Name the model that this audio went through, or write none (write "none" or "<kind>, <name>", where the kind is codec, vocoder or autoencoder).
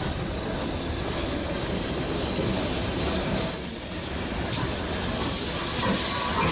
none